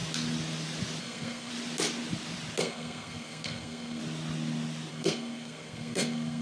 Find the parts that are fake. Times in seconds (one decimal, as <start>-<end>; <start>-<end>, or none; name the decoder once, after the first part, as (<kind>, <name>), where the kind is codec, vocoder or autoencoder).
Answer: 1.0-1.5 (codec, SNAC); 2.6-4.0; 4.9-6.4